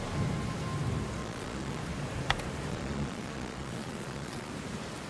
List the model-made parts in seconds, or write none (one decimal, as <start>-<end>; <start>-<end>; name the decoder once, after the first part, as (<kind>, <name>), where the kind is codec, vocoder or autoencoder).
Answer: 1.2-1.8 (vocoder, Vocos); 2.7-4.5